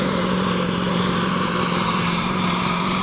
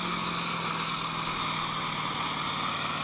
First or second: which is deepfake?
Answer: first